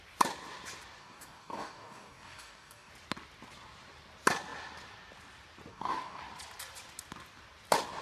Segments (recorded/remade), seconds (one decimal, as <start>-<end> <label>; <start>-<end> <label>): 0.0-1.0 recorded; 1.0-2.9 remade; 2.9-5.7 recorded; 5.7-6.2 remade; 6.2-8.0 recorded